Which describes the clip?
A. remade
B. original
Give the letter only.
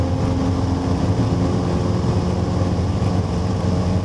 B